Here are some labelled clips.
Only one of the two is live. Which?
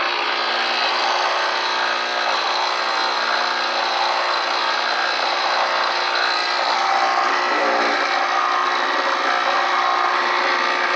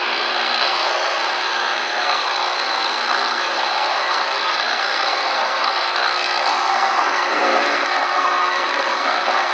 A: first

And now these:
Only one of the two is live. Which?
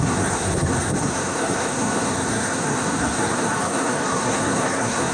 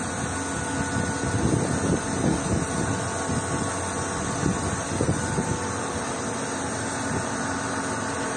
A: second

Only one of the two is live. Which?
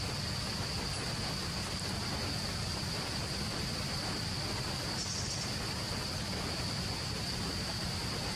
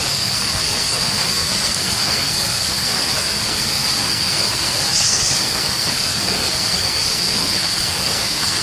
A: first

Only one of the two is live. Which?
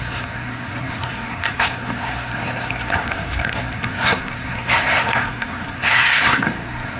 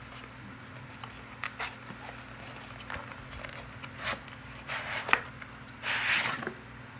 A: second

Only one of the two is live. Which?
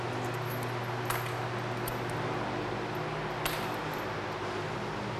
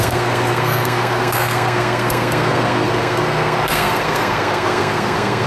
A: first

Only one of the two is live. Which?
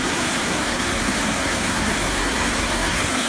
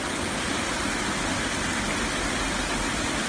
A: second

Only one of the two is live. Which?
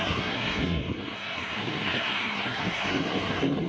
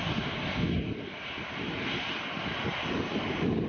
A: second